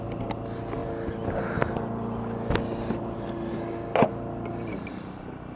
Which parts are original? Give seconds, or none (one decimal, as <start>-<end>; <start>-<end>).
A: 0.0-5.6